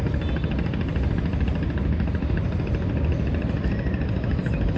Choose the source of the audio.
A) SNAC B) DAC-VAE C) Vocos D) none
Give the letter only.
D